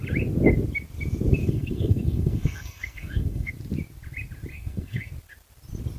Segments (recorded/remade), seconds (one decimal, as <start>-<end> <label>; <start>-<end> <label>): 0.0-1.4 recorded; 1.4-3.5 remade; 3.5-4.5 recorded; 4.5-5.1 remade; 5.1-6.0 recorded